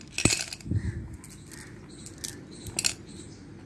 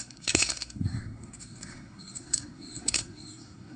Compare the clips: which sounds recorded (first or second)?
first